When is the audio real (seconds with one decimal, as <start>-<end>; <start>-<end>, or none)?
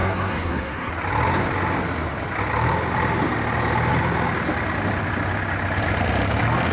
0.9-6.7